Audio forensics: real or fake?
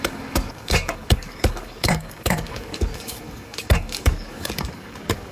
fake